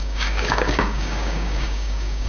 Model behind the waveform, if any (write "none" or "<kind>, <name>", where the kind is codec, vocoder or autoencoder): codec, DAC